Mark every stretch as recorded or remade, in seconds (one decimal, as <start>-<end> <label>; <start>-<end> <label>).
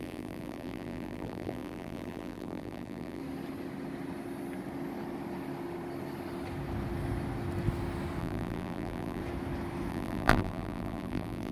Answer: 0.0-3.2 remade; 3.2-8.2 recorded; 8.2-9.2 remade; 9.2-9.9 recorded; 9.9-11.5 remade